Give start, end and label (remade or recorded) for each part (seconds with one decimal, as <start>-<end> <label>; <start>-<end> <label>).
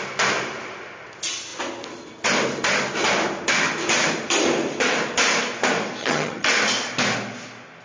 0.0-6.0 recorded; 6.0-6.5 remade; 6.5-7.8 recorded